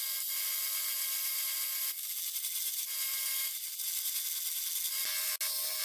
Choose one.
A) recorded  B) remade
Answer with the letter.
A